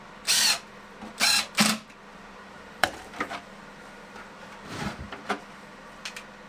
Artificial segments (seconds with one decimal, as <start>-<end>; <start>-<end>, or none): 2.1-6.0